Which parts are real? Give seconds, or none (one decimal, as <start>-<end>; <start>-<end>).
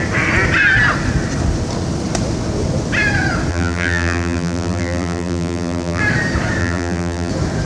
0.0-3.5; 6.0-6.6; 7.3-7.7